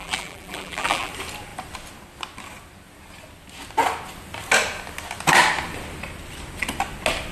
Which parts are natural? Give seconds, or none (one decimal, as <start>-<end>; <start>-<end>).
1.1-7.3